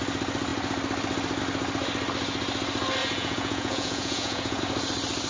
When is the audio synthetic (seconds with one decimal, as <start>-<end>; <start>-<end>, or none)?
3.0-4.6

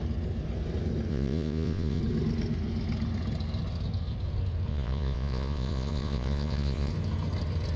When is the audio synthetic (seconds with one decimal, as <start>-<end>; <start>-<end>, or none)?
1.1-2.0; 4.7-6.9

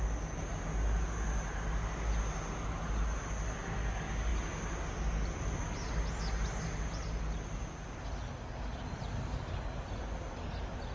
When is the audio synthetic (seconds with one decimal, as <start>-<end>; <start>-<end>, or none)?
none

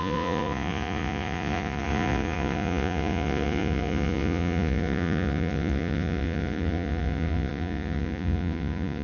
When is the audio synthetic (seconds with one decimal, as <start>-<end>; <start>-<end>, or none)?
0.0-9.0

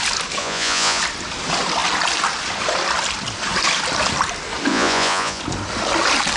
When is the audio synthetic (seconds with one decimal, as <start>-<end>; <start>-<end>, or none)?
0.4-1.0; 4.7-5.4

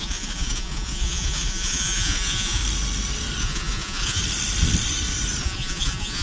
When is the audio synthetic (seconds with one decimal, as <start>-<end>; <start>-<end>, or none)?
0.0-2.6; 3.4-4.2; 5.4-6.2

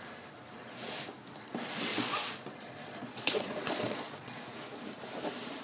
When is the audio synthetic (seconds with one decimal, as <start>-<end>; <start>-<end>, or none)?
1.9-4.4

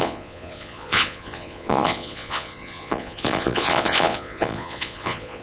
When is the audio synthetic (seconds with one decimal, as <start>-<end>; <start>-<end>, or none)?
0.0-5.4